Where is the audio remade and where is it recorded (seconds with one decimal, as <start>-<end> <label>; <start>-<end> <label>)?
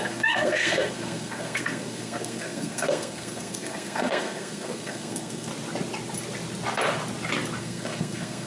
0.0-5.5 remade; 5.5-7.6 recorded; 7.6-8.5 remade